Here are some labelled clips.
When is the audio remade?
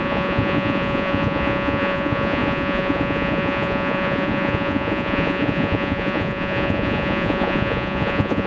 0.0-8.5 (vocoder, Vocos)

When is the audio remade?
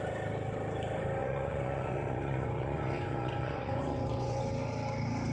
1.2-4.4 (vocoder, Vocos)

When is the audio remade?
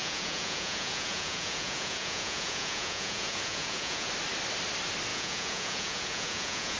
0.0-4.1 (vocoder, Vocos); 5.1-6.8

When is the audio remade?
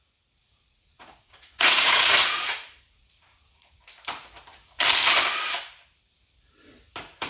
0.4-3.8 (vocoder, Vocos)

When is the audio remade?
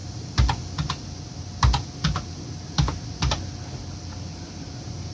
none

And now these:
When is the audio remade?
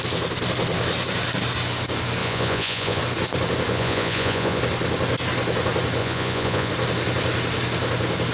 2.2-3.0 (vocoder, Vocos); 3.7-4.6; 6.0-6.7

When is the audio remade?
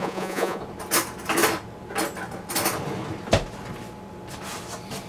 0.0-0.6 (vocoder, Vocos)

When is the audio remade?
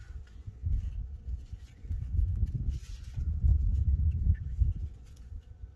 0.0-0.6 (vocoder, Vocos); 1.2-2.3; 2.9-5.8